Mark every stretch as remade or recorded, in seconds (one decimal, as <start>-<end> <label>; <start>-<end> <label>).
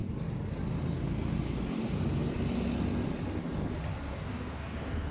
0.0-4.1 recorded; 4.1-5.1 remade